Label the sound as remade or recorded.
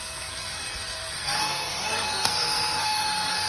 remade